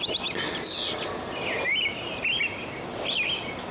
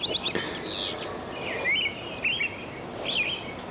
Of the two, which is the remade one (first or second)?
first